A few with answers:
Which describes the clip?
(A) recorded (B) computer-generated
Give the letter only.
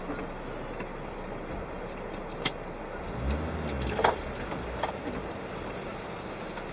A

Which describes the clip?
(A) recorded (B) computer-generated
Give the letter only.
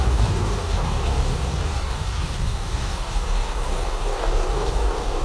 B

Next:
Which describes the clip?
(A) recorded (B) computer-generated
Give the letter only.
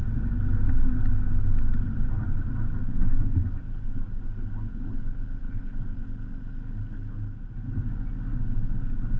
A